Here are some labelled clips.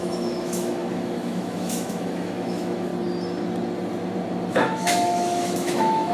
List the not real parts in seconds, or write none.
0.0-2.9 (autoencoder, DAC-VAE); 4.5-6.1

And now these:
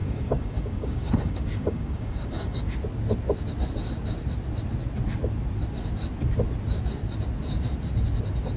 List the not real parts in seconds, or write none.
0.0-2.6 (codec, DAC)